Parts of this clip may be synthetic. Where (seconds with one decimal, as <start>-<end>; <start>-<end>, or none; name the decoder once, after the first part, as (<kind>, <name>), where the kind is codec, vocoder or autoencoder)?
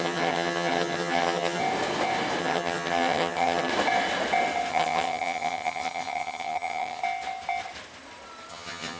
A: 0.0-1.6 (vocoder, HiFi-GAN); 2.4-3.7; 4.7-7.0; 8.5-9.0